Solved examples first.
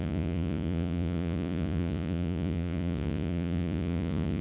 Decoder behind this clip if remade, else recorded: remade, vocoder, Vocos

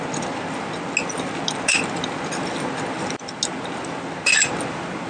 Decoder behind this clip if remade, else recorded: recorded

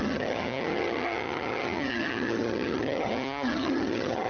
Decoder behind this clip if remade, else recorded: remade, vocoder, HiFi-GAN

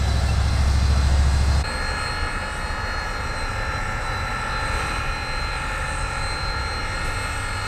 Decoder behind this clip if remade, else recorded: recorded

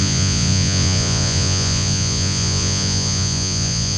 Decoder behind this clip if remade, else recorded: remade, vocoder, Vocos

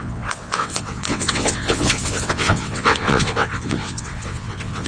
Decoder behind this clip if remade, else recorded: remade, vocoder, WaveNeXt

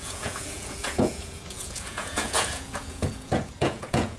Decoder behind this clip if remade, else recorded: remade, vocoder, Vocos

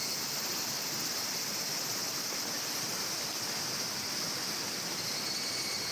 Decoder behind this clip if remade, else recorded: recorded